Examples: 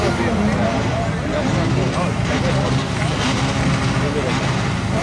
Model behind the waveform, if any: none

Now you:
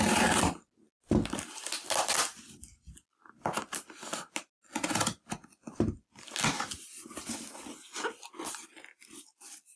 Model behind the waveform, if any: none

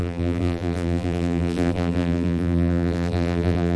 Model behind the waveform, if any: vocoder, BigVGAN v2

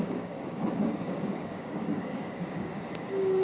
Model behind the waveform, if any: codec, DAC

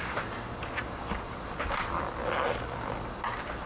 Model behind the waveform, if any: none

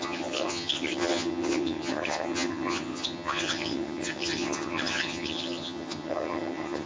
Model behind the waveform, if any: vocoder, HiFi-GAN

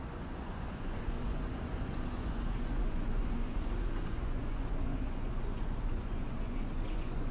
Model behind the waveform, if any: vocoder, Vocos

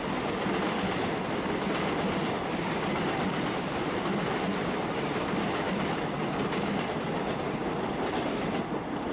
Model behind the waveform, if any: none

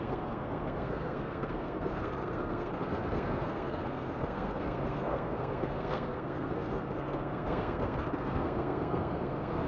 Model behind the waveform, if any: codec, SNAC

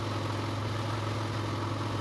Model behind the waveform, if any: none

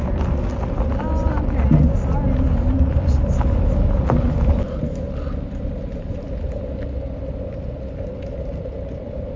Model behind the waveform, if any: none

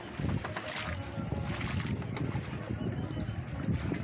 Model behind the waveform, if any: none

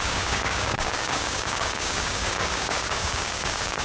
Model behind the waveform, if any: codec, DAC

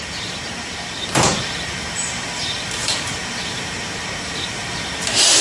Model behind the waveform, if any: vocoder, BigVGAN v2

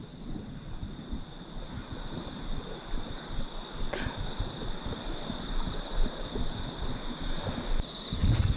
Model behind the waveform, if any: none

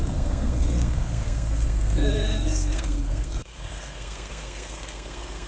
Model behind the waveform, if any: codec, SNAC